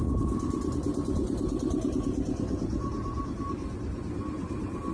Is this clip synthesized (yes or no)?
no